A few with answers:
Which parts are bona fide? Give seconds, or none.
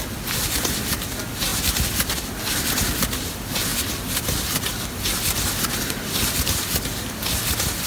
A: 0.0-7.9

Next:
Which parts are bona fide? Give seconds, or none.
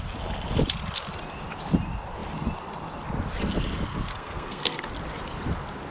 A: 0.0-4.1; 4.9-5.9